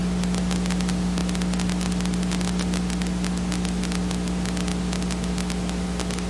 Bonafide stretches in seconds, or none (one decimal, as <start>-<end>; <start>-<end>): 0.0-6.3